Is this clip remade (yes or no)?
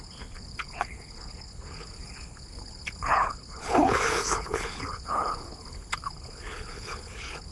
yes